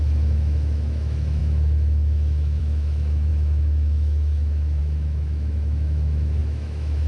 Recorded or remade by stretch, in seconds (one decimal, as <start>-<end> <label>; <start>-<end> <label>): 0.0-7.1 remade